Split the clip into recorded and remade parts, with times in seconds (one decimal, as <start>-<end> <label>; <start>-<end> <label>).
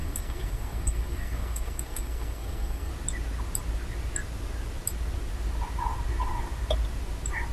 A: 0.0-2.9 remade; 2.9-7.5 recorded